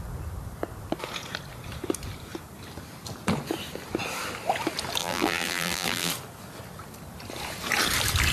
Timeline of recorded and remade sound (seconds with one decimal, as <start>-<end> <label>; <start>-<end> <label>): 0.0-5.0 recorded; 5.0-6.1 remade; 6.1-8.3 recorded